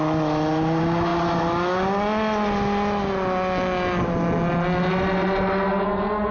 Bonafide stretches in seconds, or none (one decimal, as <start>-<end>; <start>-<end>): 0.0-6.3